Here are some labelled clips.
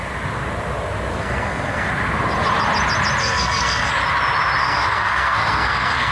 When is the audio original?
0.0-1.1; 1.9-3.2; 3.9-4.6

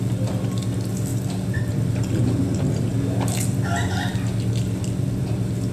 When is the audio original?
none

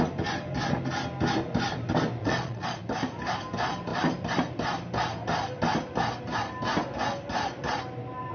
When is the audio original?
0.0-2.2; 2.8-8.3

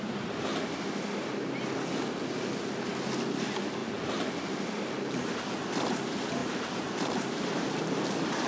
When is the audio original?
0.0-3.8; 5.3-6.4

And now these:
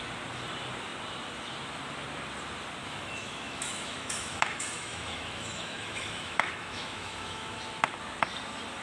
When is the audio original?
0.0-2.8; 7.6-8.8